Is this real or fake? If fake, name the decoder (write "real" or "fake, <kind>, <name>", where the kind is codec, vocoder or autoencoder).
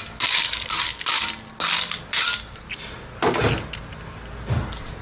real